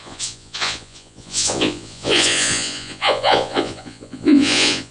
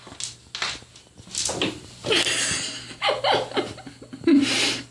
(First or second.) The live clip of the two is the second